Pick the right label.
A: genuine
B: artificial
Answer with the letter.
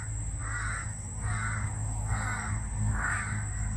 B